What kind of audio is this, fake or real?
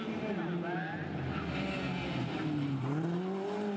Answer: real